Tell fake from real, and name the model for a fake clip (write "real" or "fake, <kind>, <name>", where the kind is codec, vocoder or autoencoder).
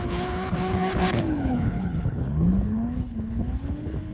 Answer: fake, codec, HILCodec